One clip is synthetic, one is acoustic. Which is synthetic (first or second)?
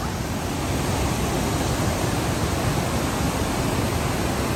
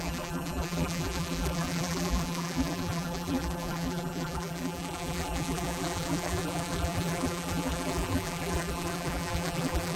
second